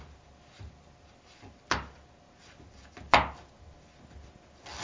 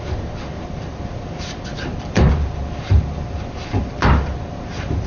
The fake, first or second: second